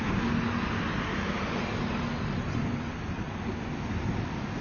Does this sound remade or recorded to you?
recorded